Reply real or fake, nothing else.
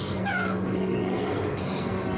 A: fake